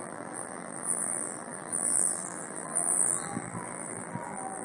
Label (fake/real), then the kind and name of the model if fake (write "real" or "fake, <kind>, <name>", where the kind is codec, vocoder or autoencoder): fake, vocoder, BigVGAN v2